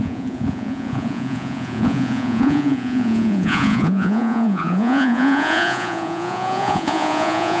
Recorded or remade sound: remade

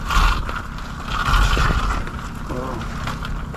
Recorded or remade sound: recorded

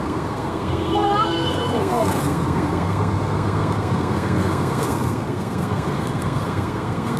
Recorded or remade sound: remade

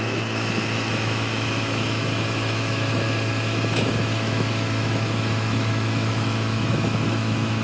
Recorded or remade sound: remade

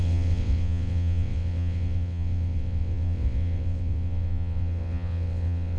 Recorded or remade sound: remade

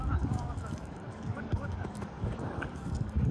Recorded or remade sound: remade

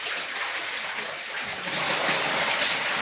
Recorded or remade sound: recorded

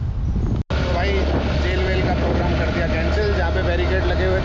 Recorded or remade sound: recorded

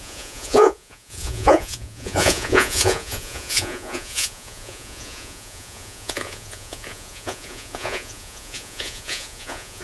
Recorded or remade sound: remade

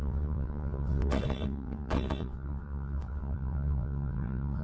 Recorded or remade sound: remade